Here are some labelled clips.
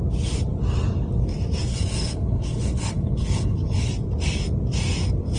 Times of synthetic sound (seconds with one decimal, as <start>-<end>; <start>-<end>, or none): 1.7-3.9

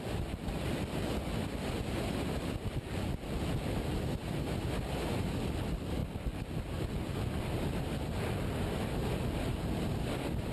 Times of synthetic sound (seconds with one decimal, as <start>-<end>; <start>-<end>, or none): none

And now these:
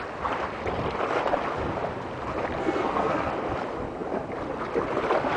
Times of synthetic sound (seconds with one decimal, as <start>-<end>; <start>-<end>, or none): 2.6-3.3